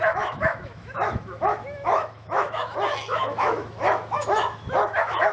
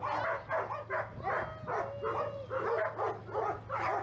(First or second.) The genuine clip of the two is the second